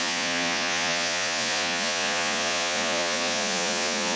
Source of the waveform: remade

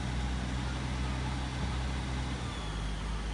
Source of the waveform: recorded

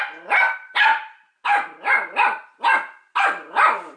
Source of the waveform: recorded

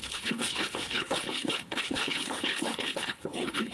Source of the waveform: remade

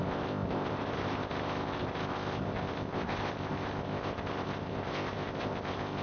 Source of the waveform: remade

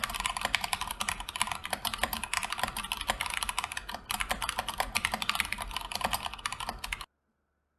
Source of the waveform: recorded